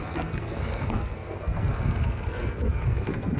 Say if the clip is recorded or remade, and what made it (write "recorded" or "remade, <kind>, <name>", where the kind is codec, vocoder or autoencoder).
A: remade, codec, SNAC